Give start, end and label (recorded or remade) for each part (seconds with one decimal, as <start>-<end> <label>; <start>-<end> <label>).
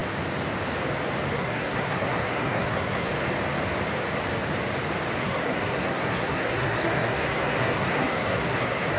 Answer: 0.0-1.3 recorded; 1.3-3.1 remade; 3.1-5.2 recorded; 5.2-9.0 remade